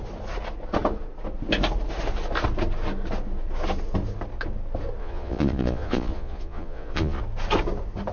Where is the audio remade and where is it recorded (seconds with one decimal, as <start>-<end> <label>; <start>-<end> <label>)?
0.0-5.0 recorded; 5.0-7.2 remade; 7.2-8.1 recorded